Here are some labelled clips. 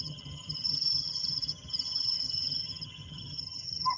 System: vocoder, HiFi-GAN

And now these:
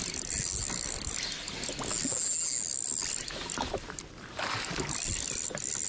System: none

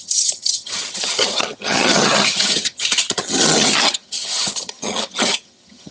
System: vocoder, HiFi-GAN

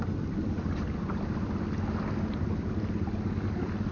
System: none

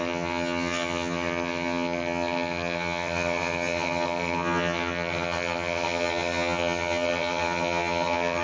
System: vocoder, HiFi-GAN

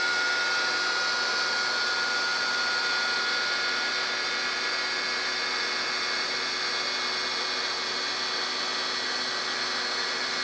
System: none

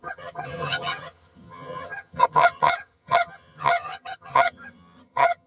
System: vocoder, HiFi-GAN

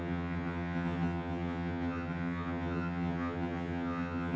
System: vocoder, HiFi-GAN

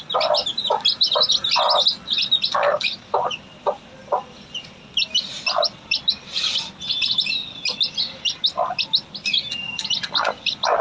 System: none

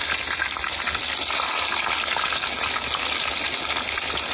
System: none